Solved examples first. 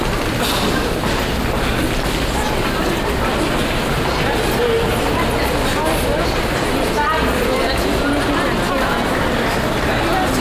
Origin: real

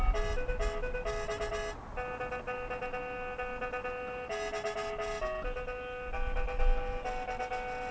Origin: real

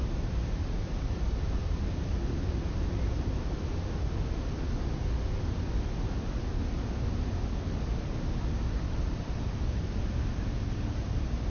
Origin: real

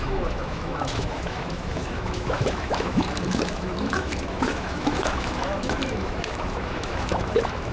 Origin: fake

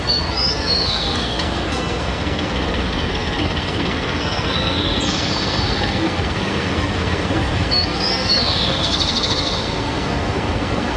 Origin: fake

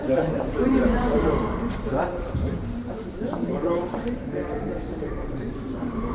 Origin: fake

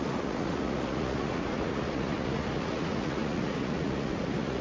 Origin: fake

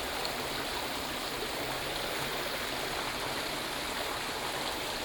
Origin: real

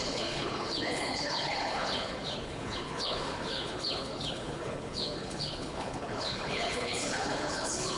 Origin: fake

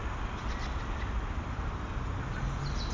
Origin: real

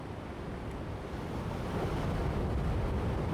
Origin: real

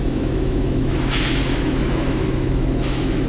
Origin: fake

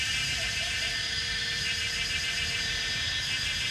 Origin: fake